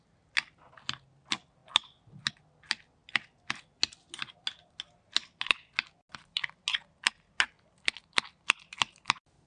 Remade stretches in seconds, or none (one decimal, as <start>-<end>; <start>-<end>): none